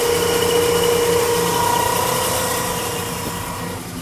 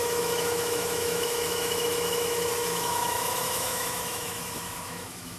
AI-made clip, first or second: second